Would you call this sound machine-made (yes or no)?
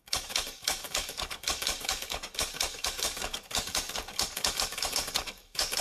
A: yes